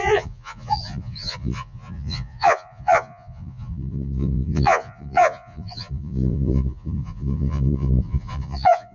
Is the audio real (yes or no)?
no